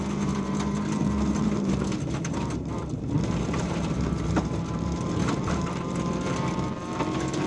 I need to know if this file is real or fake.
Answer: fake